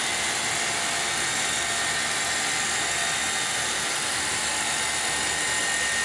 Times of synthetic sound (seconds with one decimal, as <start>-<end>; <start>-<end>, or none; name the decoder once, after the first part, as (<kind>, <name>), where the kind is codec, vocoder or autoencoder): none